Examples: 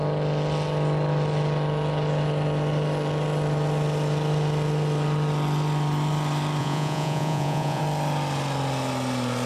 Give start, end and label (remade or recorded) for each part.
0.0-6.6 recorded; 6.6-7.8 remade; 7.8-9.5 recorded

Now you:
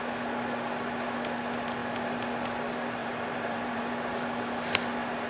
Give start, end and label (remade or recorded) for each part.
0.0-3.0 recorded; 3.0-3.8 remade; 3.8-5.3 recorded

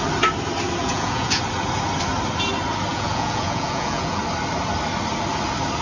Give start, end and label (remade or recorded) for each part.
0.0-0.8 recorded; 0.8-1.4 remade; 1.4-2.9 recorded; 2.9-4.2 remade; 4.2-5.8 recorded

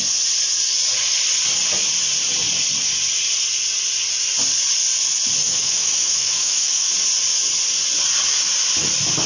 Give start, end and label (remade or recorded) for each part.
0.0-5.4 recorded; 5.4-6.9 remade; 6.9-9.3 recorded

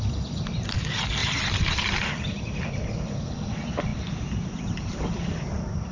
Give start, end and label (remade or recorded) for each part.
0.0-1.2 recorded; 1.2-2.6 remade; 2.6-3.9 recorded; 3.9-5.4 remade; 5.4-5.9 recorded

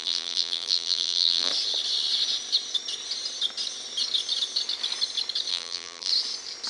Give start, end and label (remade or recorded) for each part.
0.0-1.5 remade; 1.5-5.5 recorded; 5.5-6.1 remade; 6.1-6.7 recorded

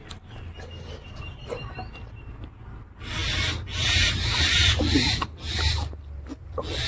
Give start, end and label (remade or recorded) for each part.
0.0-6.9 recorded